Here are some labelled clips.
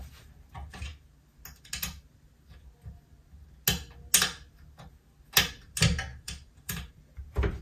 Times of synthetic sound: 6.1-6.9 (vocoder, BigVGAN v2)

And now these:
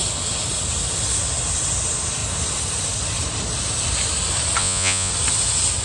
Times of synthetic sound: 4.6-5.1 (vocoder, Vocos)

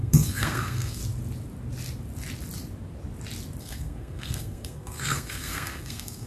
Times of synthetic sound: 0.0-1.0 (codec, SNAC); 3.6-6.3

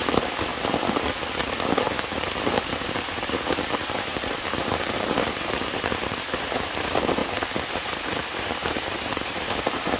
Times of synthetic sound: 0.0-0.5 (vocoder, BigVGAN v2); 2.3-7.2; 7.7-10.0